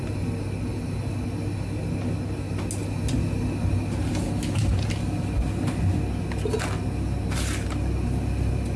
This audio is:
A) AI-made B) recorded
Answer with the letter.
B